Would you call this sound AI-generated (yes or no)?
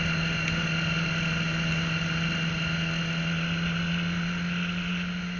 no